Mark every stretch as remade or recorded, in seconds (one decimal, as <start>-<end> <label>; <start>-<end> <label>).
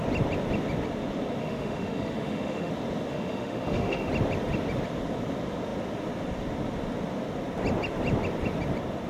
0.0-1.4 recorded; 1.4-2.7 remade; 2.7-3.1 recorded; 3.1-4.1 remade; 4.1-9.1 recorded